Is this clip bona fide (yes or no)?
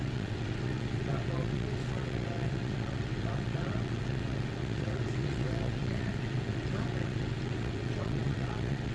no